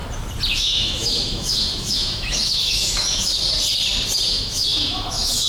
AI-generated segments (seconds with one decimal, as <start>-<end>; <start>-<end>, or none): 0.5-3.4; 4.3-5.5